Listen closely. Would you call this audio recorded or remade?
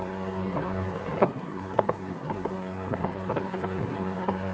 remade